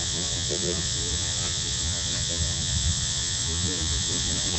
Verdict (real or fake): fake